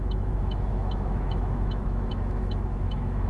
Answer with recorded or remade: remade